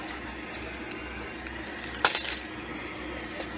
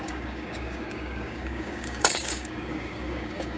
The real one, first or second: first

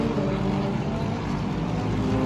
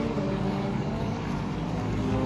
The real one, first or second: first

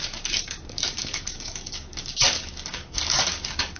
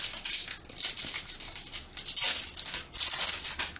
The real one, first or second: second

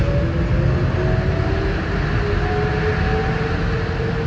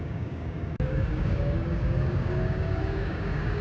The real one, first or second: first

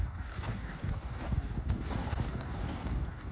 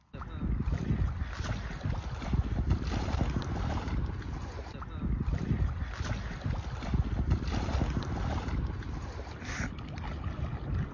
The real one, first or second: second